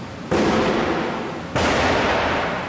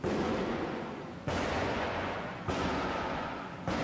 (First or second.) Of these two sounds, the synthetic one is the second